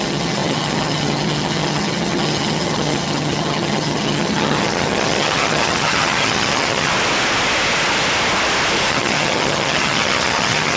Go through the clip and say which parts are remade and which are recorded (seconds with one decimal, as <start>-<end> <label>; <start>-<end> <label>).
0.0-6.9 remade; 6.9-8.9 recorded; 8.9-10.8 remade